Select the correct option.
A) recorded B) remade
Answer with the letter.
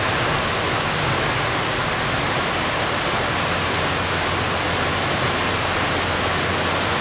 A